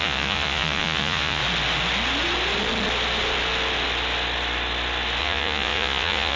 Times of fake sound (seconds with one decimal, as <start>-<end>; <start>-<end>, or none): 0.0-1.4; 5.2-6.4